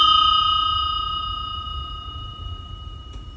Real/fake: fake